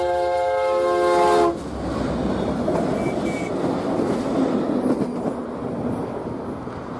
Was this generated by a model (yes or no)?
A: no